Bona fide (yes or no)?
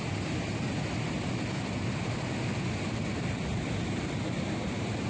yes